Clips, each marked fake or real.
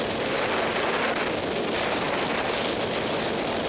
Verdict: real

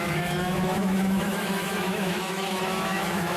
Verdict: fake